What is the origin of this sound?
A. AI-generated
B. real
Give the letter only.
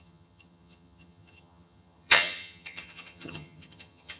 A